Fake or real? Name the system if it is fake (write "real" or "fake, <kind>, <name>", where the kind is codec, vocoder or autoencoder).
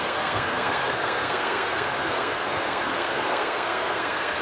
fake, codec, SNAC